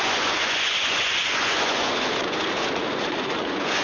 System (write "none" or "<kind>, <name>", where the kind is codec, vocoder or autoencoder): vocoder, Vocos